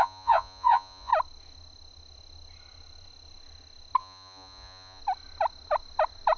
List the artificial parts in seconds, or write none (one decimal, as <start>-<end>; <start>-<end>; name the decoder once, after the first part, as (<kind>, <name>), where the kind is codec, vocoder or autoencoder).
0.0-1.1 (vocoder, Vocos); 4.0-5.0